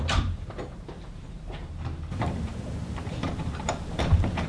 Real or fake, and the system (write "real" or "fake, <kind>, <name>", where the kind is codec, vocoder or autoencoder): fake, vocoder, BigVGAN v2